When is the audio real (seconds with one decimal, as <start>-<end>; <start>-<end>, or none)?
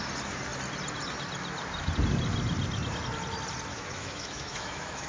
0.0-3.7